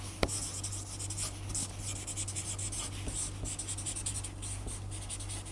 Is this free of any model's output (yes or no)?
yes